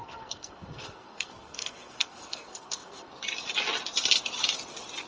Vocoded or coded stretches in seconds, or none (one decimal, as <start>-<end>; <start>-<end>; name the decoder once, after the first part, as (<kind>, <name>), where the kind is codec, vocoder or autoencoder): 0.0-3.1 (codec, SNAC)